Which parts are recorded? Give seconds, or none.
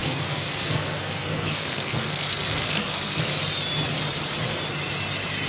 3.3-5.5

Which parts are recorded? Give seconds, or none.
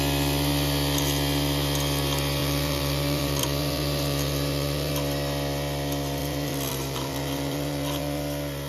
0.0-2.4; 4.9-6.2; 8.2-8.7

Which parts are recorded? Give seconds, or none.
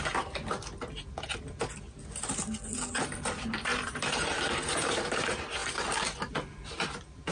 0.4-2.9; 5.6-6.3